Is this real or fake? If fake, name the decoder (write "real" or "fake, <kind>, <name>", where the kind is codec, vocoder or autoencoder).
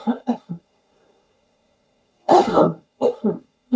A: fake, codec, SNAC